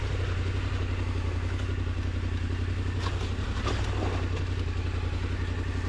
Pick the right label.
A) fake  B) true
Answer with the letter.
B